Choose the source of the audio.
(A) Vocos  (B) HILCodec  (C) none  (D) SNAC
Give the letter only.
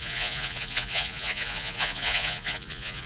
A